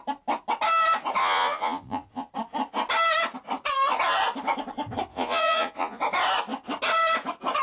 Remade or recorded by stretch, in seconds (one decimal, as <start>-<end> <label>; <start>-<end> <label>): 0.0-1.2 recorded; 1.2-2.3 remade; 2.3-5.1 recorded; 5.1-6.0 remade; 6.0-7.6 recorded